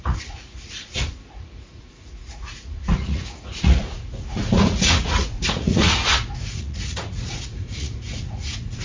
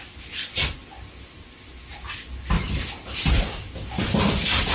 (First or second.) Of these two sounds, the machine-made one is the first